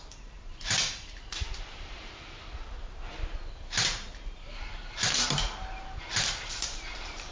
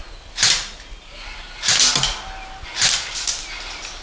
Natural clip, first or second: second